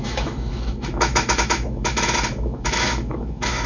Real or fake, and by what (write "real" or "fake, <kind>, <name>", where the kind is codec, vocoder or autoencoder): fake, autoencoder, DAC-VAE